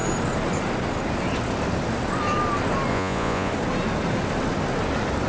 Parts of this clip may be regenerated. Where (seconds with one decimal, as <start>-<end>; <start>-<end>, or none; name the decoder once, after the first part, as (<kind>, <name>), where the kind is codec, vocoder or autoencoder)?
2.9-3.5 (vocoder, Vocos)